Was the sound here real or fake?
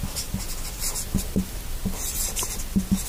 real